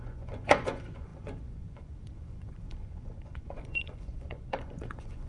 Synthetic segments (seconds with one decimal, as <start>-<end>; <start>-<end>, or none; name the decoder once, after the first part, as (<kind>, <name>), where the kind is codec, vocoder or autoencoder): 0.0-5.3 (vocoder, Vocos)